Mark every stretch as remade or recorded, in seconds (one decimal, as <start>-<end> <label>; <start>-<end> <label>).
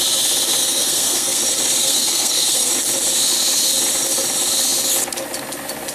0.0-0.6 recorded; 0.6-1.4 remade; 1.4-1.8 recorded; 1.8-2.7 remade; 2.7-5.9 recorded